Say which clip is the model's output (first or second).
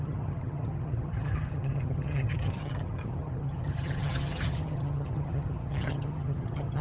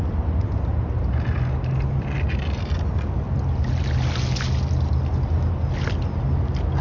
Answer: first